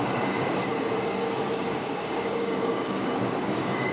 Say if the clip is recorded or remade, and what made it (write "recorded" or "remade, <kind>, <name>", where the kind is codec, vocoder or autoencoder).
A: remade, codec, DAC